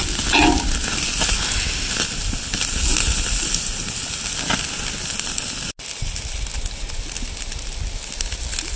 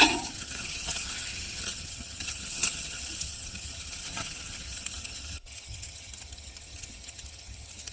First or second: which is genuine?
first